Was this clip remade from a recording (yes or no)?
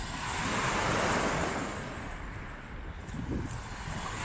no